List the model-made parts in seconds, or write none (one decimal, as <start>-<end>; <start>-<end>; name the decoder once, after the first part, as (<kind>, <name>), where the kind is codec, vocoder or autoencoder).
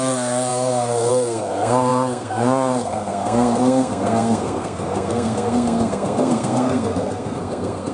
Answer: 0.0-7.9 (codec, SNAC)